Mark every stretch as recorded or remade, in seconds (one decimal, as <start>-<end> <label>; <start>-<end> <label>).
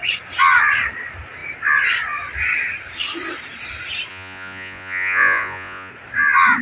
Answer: 0.0-4.1 recorded; 4.1-5.9 remade; 5.9-6.6 recorded